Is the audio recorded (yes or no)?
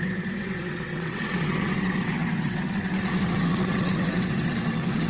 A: no